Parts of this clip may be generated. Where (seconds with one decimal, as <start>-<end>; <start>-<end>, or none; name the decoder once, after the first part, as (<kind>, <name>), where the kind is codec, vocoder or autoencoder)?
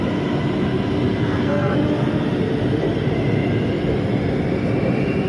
1.1-1.7 (codec, SNAC)